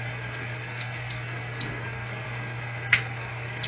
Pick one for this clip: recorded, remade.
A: remade